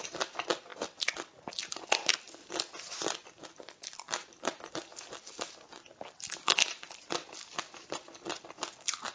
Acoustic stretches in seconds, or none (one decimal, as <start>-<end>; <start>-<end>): 0.0-0.7; 1.4-3.4; 4.4-9.1